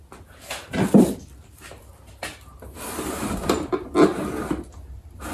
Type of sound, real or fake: real